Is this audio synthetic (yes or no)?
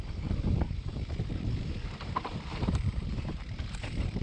yes